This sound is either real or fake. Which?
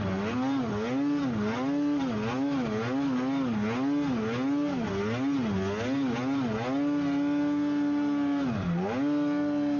real